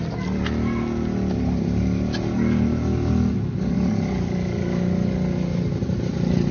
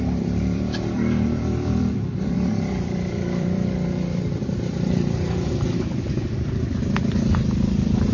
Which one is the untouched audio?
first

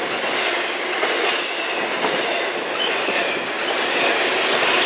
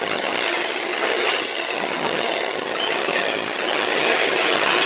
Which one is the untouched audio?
first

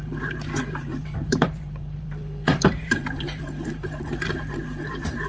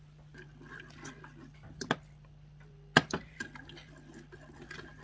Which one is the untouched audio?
second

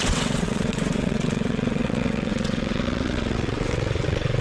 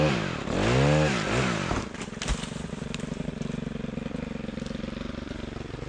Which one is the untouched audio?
second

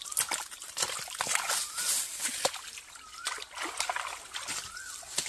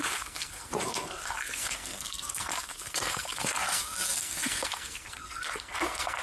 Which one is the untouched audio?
first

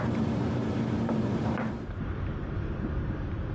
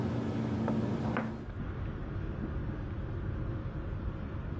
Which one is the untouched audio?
second